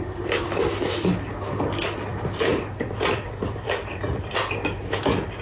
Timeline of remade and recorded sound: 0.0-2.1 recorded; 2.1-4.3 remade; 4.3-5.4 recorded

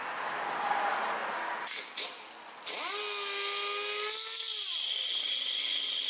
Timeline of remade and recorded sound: 0.0-6.1 recorded

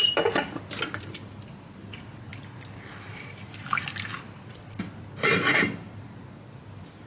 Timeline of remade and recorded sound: 0.0-7.1 remade

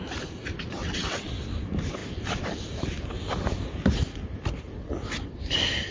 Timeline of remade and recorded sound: 0.0-0.8 recorded; 0.8-1.3 remade; 1.3-5.9 recorded

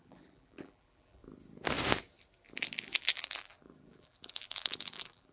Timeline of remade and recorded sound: 0.0-1.2 remade; 1.2-3.0 recorded; 3.0-5.3 remade

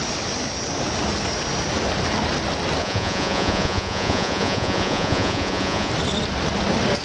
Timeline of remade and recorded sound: 0.0-2.8 recorded; 2.8-5.9 remade; 5.9-7.0 recorded